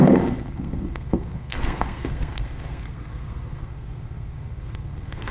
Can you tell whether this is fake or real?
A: fake